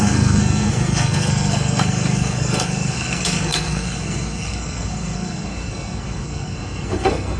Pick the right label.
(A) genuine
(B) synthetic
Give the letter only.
B